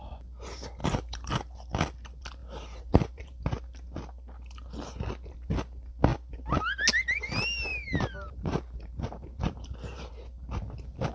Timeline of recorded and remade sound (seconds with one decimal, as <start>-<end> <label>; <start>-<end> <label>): 0.0-0.8 recorded; 0.8-1.3 remade; 1.3-2.4 recorded; 2.4-3.4 remade; 3.4-7.7 recorded; 7.7-10.1 remade; 10.1-11.1 recorded